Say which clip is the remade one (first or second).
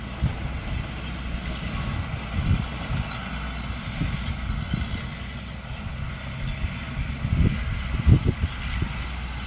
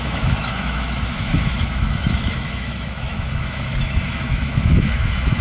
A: second